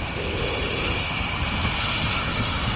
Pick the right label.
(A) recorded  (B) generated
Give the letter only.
A